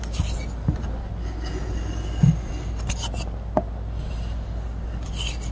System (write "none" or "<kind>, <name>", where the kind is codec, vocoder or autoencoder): none